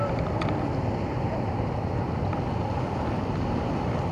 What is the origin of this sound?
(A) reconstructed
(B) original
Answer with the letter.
B